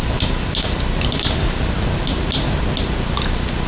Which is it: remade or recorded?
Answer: recorded